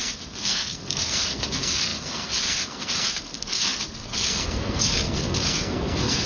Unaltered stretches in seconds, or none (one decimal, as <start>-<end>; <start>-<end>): none